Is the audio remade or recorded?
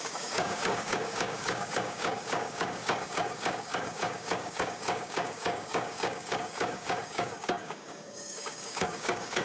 remade